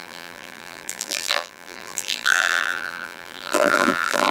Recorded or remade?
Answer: remade